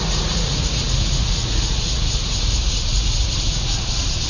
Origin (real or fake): fake